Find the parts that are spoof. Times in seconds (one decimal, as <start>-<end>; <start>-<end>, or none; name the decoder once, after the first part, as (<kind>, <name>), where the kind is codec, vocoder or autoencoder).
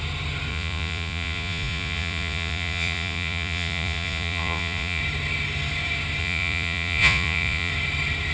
0.5-5.0 (vocoder, Vocos); 6.2-7.7